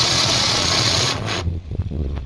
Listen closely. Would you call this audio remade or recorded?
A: remade